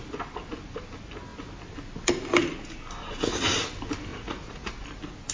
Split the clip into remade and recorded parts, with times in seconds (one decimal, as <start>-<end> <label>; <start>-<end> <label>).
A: 0.0-4.1 recorded; 4.1-4.7 remade; 4.7-5.3 recorded